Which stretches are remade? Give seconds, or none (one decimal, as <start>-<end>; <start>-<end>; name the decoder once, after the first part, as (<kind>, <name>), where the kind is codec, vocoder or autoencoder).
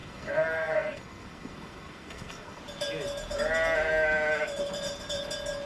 0.0-2.6 (codec, SNAC)